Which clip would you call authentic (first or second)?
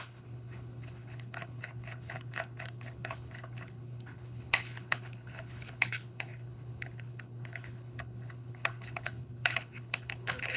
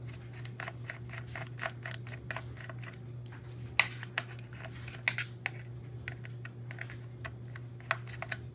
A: second